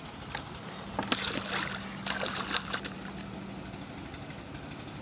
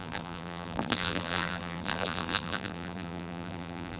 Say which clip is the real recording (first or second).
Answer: first